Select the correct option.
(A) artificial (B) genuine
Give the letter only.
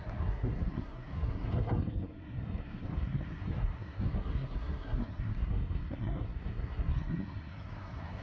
A